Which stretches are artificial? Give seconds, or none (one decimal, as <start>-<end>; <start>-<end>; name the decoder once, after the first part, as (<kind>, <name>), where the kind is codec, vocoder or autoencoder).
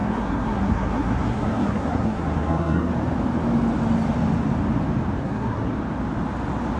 0.0-2.9 (codec, SNAC); 5.2-5.7